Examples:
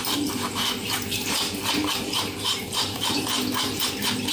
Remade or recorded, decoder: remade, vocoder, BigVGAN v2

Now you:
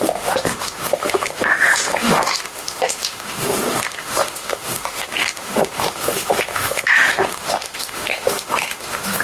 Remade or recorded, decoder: remade, autoencoder, DAC-VAE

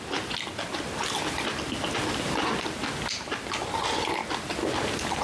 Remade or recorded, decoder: recorded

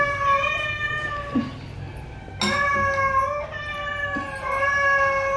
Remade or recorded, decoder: recorded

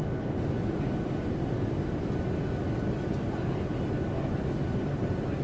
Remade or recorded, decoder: recorded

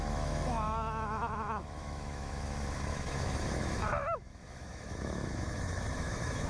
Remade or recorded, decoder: remade, autoencoder, DAC-VAE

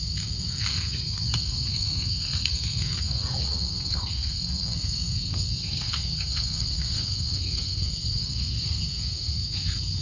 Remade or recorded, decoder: remade, codec, SNAC